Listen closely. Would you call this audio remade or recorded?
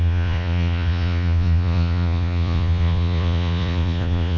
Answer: remade